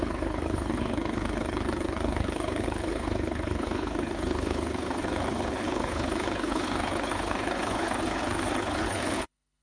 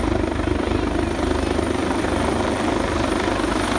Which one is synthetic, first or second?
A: first